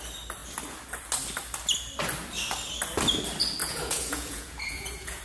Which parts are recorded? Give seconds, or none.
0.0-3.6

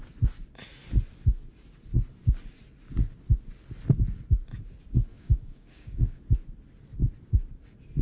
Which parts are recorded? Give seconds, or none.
0.0-5.1; 6.2-8.0

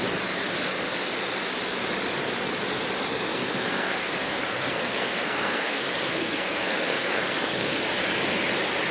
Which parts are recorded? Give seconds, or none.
0.0-3.1; 7.8-8.9

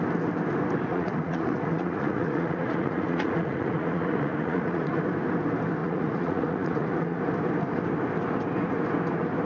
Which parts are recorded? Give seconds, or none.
0.0-0.9; 5.0-5.8; 7.2-9.4

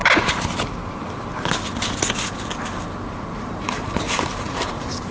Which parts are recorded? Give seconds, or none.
0.0-3.1

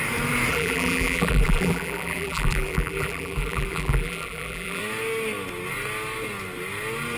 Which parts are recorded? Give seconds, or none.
0.0-0.5; 4.8-7.2

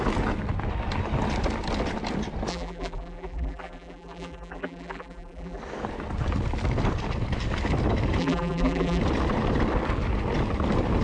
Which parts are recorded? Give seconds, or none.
0.0-2.5; 5.6-8.2; 9.0-11.0